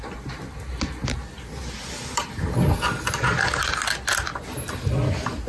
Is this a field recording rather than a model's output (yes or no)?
yes